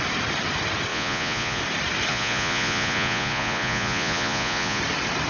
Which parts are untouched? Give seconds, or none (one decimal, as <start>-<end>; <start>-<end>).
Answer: 0.0-0.9; 1.6-2.1; 4.8-5.3